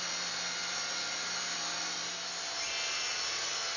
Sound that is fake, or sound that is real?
real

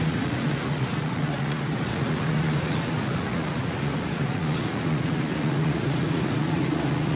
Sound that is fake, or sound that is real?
fake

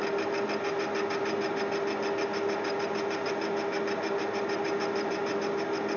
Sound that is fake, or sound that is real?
real